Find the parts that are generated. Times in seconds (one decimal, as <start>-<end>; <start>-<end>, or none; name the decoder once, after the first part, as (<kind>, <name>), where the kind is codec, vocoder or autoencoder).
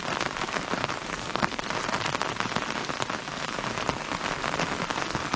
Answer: 1.1-1.6 (codec, SNAC)